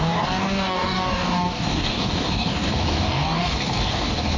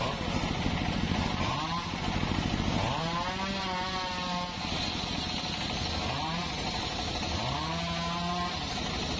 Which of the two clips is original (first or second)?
second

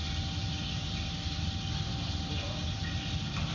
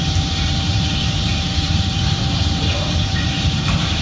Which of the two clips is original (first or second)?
first